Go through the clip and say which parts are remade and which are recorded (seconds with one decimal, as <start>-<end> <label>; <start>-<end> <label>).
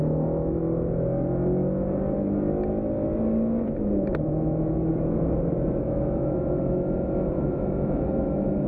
0.0-0.6 remade; 0.6-4.3 recorded; 4.3-4.9 remade; 4.9-5.8 recorded; 5.8-8.7 remade